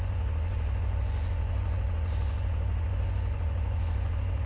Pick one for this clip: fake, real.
fake